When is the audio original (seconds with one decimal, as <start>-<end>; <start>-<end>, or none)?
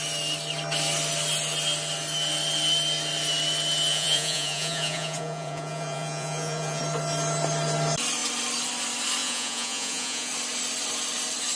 0.0-3.9; 6.8-9.2; 10.3-11.6